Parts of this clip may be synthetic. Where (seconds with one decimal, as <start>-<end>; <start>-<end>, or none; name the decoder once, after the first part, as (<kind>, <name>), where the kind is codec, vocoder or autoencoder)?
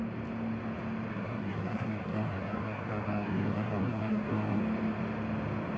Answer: 1.1-4.6 (codec, SNAC)